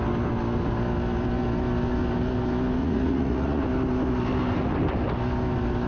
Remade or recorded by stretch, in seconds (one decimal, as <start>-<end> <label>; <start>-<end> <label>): 0.0-2.8 recorded; 2.8-3.6 remade; 3.6-5.9 recorded